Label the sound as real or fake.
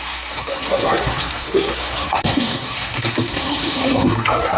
fake